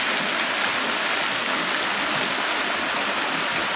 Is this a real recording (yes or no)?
yes